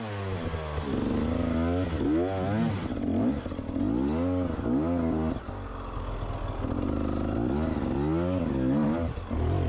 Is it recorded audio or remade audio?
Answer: recorded